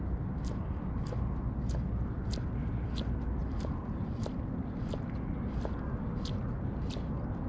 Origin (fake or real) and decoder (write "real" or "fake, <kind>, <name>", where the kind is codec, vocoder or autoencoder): real